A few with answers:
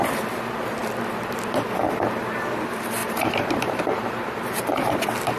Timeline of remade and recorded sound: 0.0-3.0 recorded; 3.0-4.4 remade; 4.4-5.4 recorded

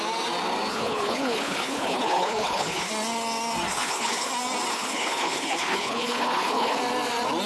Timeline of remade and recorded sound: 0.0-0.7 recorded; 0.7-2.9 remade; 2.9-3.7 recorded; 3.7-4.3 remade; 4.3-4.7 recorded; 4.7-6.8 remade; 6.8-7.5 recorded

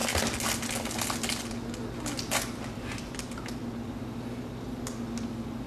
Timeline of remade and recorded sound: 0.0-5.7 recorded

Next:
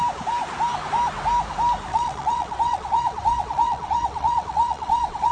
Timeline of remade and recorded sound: 0.0-1.9 recorded; 1.9-5.3 remade

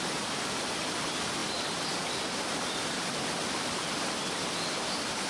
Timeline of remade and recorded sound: 0.0-5.3 recorded

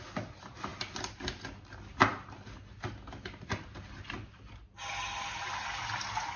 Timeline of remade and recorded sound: 0.0-6.4 recorded